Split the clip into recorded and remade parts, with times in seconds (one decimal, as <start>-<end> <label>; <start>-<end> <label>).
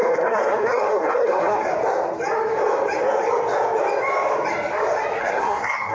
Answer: 0.0-1.7 remade; 1.7-5.2 recorded; 5.2-5.9 remade